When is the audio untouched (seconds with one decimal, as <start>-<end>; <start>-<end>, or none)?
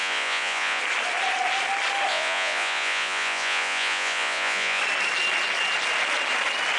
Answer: 0.8-2.1; 4.8-6.8